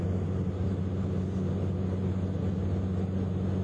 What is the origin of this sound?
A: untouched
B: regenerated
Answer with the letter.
A